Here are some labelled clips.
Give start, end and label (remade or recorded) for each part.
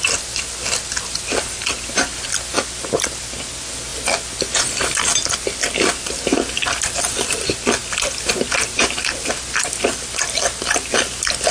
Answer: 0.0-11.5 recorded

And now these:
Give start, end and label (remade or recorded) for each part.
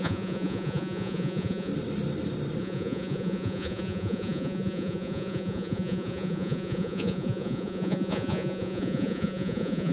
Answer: 0.0-1.7 remade; 1.7-2.6 recorded; 2.6-9.9 remade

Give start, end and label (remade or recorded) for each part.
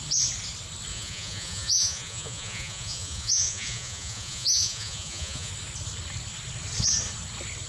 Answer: 0.0-0.9 recorded; 0.9-5.5 remade; 5.5-7.7 recorded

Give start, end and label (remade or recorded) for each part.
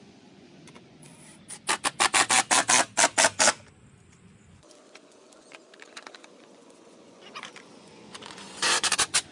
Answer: 0.0-1.1 remade; 1.1-4.2 recorded; 4.2-9.3 remade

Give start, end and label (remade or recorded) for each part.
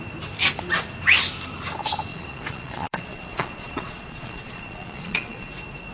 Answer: 0.0-2.1 recorded; 2.1-5.5 remade; 5.5-5.9 recorded